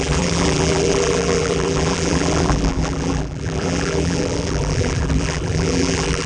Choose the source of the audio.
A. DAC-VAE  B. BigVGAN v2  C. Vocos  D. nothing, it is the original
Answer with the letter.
B